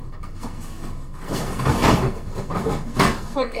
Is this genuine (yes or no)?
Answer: no